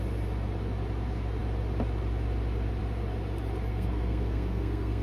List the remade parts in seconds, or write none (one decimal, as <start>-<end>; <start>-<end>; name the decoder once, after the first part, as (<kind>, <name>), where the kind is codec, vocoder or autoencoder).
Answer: 3.7-5.0 (codec, SNAC)